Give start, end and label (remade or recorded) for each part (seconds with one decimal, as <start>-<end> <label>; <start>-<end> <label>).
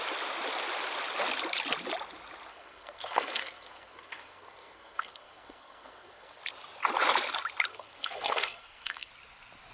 0.0-2.5 recorded; 2.5-6.4 remade; 6.4-7.7 recorded; 7.7-9.1 remade; 9.1-9.7 recorded